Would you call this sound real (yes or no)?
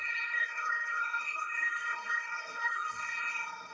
no